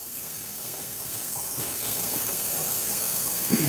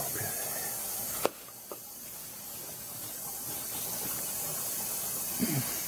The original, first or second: second